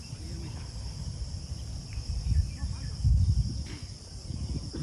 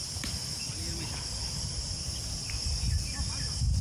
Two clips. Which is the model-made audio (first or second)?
first